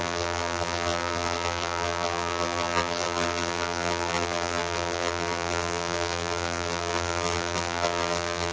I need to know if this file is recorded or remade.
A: remade